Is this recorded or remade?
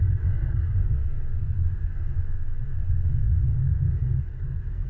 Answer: remade